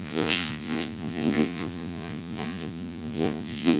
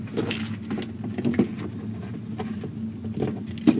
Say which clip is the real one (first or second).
second